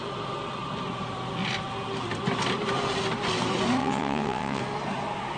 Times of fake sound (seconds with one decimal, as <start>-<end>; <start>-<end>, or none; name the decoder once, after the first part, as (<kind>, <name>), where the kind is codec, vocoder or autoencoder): 3.8-4.6 (vocoder, WaveNeXt)